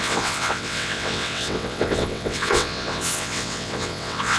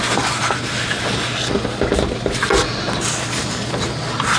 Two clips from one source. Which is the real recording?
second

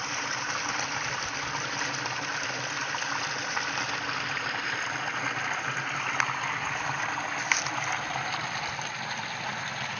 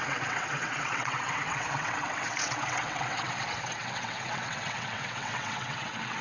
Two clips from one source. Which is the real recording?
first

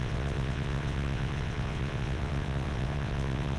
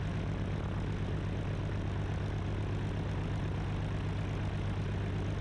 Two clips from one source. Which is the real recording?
second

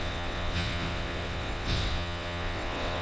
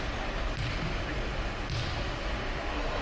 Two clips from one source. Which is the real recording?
second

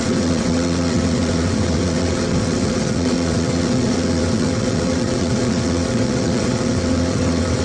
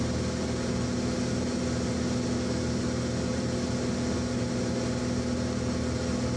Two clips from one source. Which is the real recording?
second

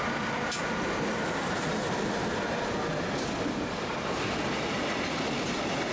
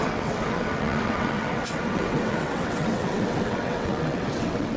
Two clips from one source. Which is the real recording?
first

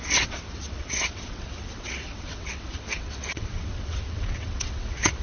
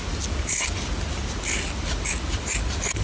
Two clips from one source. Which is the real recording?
second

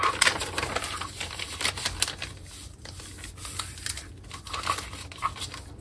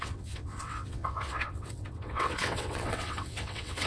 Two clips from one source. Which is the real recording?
first